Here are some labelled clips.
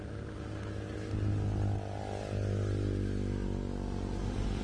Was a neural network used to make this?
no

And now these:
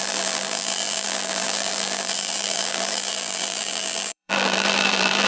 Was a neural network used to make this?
yes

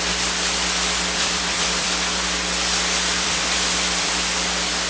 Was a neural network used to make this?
yes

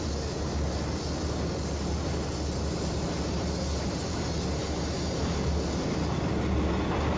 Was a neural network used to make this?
no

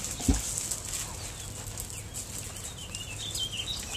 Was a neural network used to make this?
no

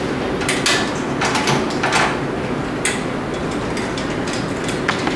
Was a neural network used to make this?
no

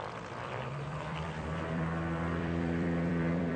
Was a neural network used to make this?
yes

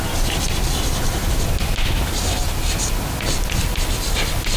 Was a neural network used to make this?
no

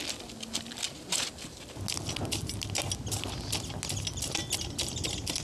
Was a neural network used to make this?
no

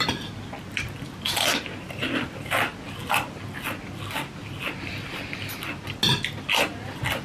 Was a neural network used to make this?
no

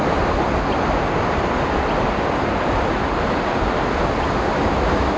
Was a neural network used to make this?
no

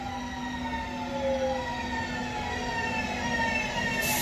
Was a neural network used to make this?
no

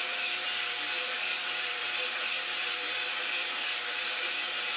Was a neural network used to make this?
yes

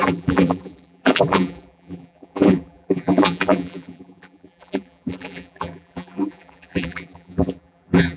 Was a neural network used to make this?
yes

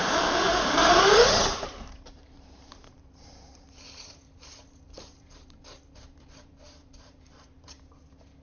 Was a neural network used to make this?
yes